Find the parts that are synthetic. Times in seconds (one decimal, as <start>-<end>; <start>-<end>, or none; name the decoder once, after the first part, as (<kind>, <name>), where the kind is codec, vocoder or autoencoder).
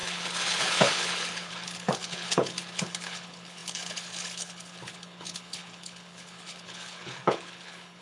0.0-8.0 (codec, HILCodec)